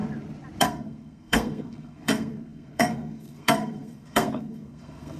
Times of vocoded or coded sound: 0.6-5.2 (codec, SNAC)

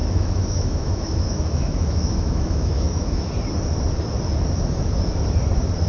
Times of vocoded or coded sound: 0.0-3.3 (autoencoder, DAC-VAE)

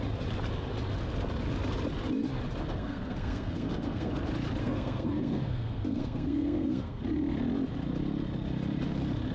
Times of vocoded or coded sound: 2.7-4.1 (codec, SNAC); 4.6-7.0

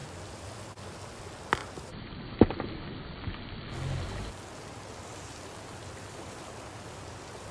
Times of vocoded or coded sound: 1.6-2.2 (vocoder, BigVGAN v2)

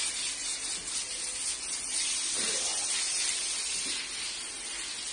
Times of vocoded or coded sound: none

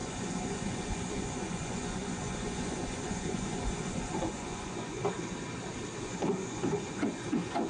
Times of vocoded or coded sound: 0.0-5.0 (vocoder, Vocos); 6.0-7.7

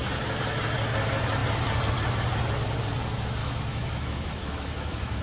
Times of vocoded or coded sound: 3.4-5.2 (autoencoder, DAC-VAE)